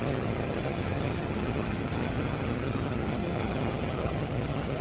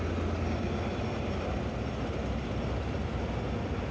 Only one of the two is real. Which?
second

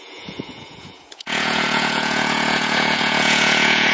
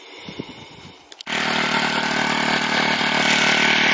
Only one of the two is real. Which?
second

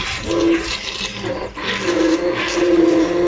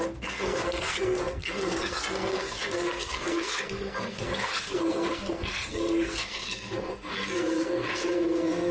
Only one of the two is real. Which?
first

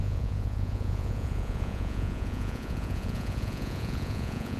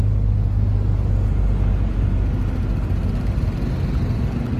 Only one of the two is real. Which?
second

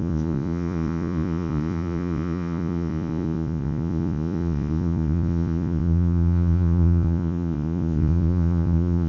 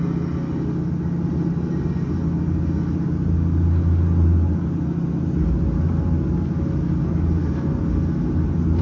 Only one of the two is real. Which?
second